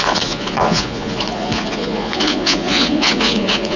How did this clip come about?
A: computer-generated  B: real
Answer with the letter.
A